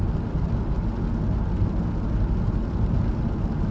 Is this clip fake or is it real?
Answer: real